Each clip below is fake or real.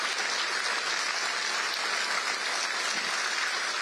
real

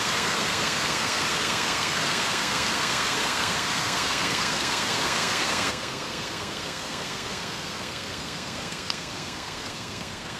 fake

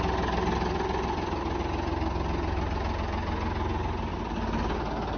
real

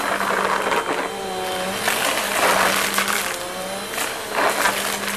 real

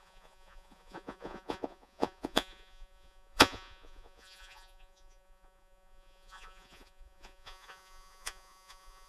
fake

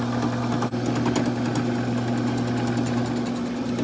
real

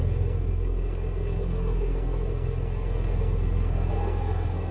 fake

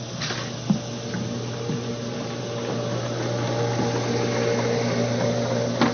real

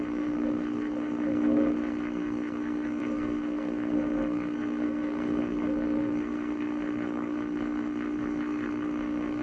fake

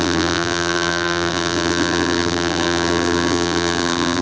fake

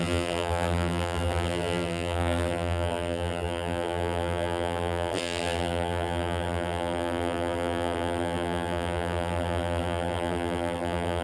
fake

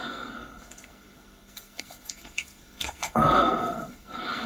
fake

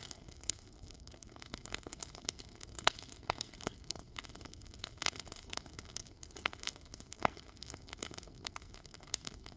fake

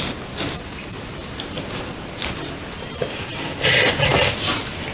real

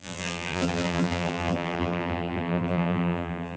fake